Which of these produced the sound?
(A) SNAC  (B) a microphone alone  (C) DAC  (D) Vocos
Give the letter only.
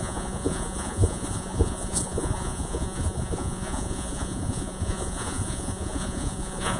D